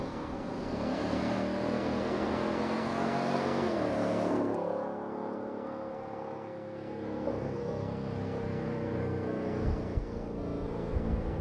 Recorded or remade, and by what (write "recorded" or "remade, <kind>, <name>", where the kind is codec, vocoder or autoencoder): remade, codec, SNAC